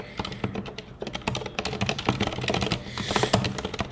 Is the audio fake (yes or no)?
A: no